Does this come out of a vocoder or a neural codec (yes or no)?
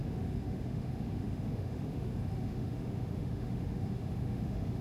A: yes